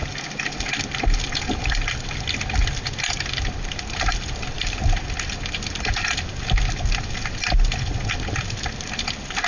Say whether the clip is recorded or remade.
recorded